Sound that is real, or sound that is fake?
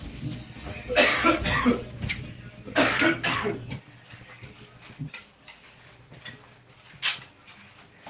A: fake